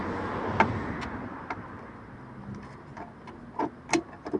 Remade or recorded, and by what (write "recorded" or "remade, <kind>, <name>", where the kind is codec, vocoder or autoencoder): recorded